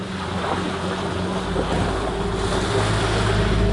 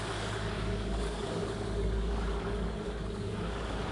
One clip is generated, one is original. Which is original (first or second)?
first